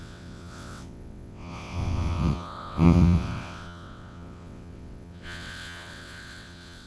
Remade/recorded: remade